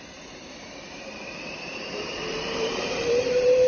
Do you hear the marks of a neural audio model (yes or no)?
yes